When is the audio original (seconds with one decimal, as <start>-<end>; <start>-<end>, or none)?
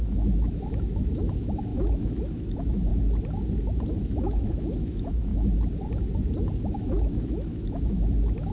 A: 2.9-3.9; 5.3-6.6